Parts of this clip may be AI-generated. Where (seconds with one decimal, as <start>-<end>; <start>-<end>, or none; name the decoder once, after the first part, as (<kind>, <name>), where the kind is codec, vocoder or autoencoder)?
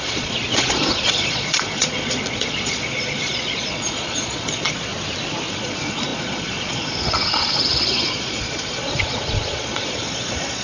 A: 0.0-4.9 (vocoder, Vocos); 5.5-10.6